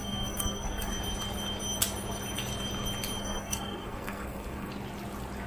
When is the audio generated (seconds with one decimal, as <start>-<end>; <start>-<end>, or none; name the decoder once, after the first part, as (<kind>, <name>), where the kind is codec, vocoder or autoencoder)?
0.0-0.9 (codec, SNAC); 3.2-4.7